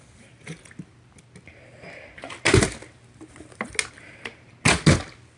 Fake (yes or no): no